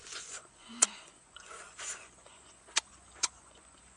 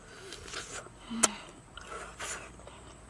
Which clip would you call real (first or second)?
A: second